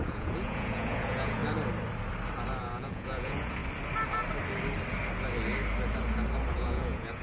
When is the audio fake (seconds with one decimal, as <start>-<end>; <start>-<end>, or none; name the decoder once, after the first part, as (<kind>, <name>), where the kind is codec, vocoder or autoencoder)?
0.0-1.4 (vocoder, Vocos); 2.6-3.6; 6.5-7.2